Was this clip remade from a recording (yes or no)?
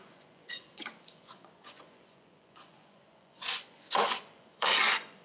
yes